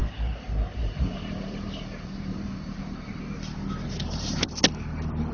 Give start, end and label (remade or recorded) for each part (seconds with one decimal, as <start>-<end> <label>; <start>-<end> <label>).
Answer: 0.0-3.2 remade; 3.2-4.0 recorded; 4.0-4.5 remade; 4.5-5.3 recorded